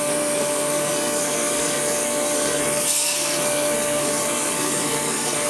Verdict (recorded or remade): remade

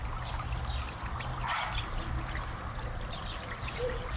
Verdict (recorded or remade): recorded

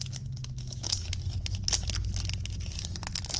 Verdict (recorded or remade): recorded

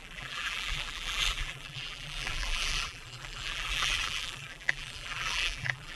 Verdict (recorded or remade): remade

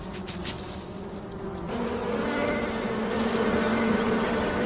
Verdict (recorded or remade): recorded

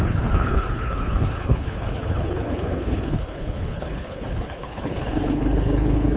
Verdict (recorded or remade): remade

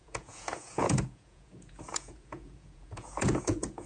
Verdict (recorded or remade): remade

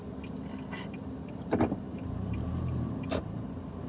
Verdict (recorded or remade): recorded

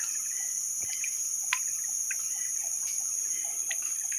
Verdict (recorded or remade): recorded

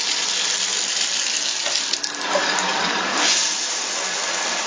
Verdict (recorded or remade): recorded